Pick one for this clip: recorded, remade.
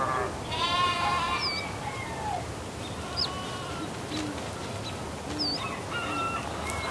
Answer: recorded